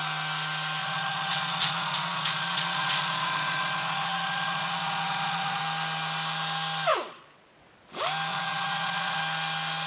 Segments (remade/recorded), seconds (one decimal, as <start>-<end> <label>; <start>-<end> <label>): 0.0-0.8 recorded; 0.8-5.6 remade; 5.6-6.9 recorded; 6.9-7.6 remade; 7.6-8.3 recorded; 8.3-9.2 remade; 9.2-9.9 recorded